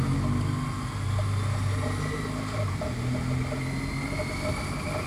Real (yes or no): yes